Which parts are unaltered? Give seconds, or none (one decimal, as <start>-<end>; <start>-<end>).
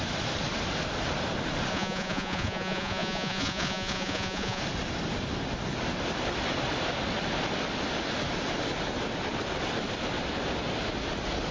0.0-1.7; 4.6-11.5